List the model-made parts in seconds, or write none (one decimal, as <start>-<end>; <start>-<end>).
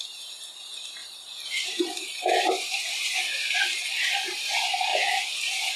0.0-5.8